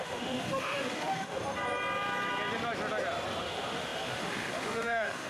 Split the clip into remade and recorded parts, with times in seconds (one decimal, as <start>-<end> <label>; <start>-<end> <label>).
0.0-1.4 remade; 1.4-3.4 recorded; 3.4-5.3 remade